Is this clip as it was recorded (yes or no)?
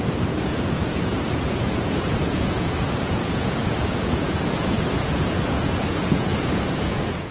no